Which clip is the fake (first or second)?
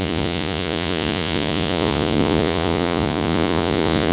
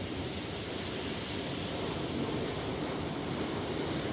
first